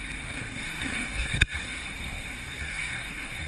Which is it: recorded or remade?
remade